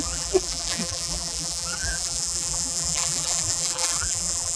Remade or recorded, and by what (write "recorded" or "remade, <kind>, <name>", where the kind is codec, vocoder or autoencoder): remade, vocoder, BigVGAN v2